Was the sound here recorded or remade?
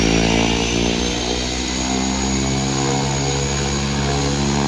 recorded